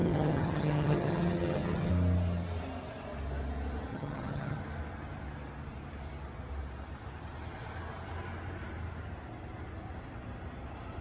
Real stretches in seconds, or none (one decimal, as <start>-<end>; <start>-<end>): 1.9-3.9; 4.6-11.0